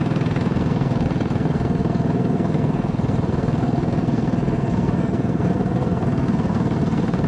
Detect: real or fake fake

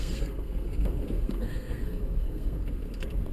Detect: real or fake fake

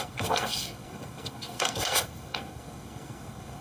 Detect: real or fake fake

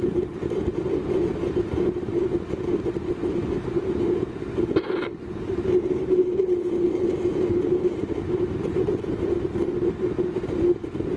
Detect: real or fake real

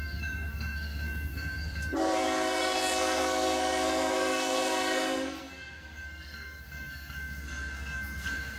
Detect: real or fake fake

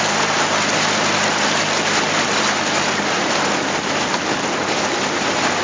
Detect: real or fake real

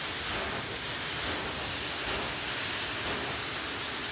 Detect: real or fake real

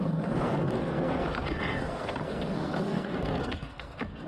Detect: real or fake fake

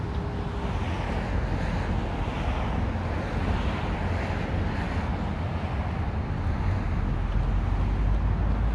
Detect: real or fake real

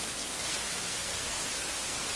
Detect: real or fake fake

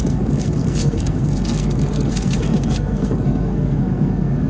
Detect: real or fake fake